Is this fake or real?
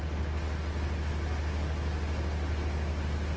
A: real